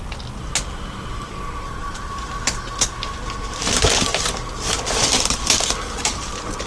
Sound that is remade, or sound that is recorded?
recorded